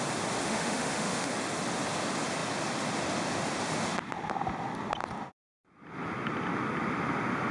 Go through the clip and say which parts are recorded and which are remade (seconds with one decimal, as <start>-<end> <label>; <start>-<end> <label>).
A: 0.0-0.4 recorded; 0.4-1.3 remade; 1.3-7.5 recorded